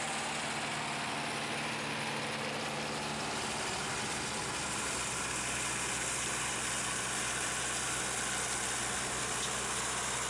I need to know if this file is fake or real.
real